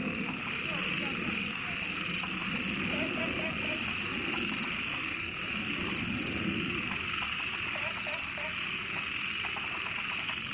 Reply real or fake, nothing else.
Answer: real